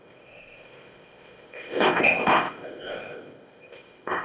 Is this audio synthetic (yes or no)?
yes